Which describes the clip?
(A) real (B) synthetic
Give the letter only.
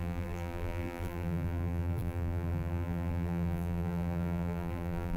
B